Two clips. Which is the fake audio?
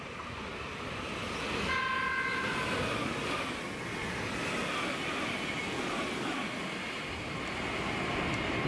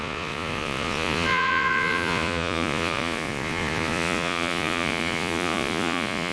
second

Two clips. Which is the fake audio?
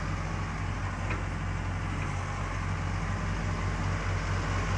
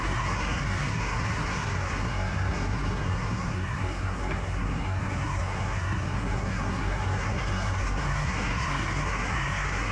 second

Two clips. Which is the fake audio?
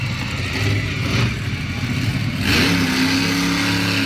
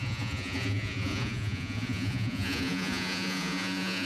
second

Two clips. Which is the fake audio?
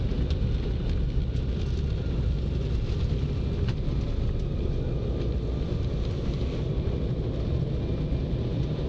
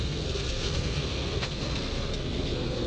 second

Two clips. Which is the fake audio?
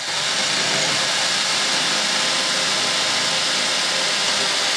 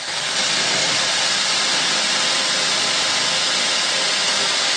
second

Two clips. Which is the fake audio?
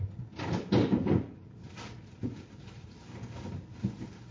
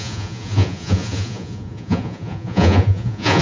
second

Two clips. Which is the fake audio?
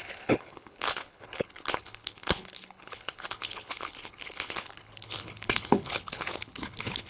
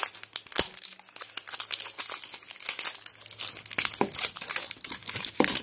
first